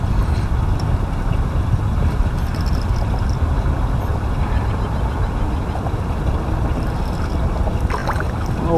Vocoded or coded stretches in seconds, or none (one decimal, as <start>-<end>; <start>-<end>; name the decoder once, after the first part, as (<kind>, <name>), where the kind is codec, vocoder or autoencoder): none